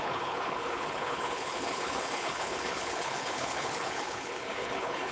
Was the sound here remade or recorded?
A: remade